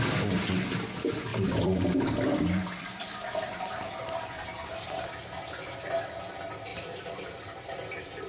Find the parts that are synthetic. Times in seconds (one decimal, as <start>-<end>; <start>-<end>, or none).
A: 1.3-4.7; 6.7-7.7